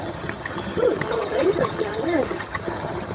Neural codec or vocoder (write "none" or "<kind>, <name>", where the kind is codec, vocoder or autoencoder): vocoder, HiFi-GAN